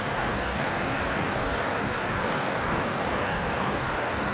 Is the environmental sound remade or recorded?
remade